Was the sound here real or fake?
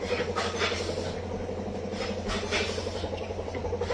real